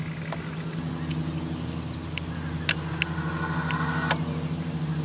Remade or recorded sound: recorded